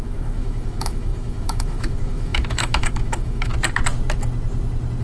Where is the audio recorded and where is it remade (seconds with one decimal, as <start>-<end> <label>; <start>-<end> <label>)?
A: 0.0-3.5 remade; 3.5-5.0 recorded